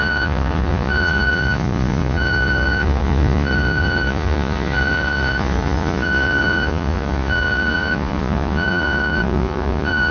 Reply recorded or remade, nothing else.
remade